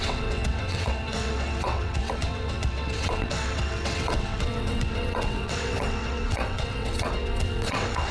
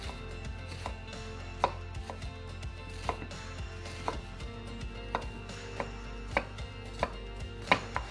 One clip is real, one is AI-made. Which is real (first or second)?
second